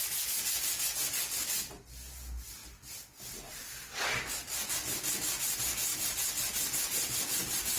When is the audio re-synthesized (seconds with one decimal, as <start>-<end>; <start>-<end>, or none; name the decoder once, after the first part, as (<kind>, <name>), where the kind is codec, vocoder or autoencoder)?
none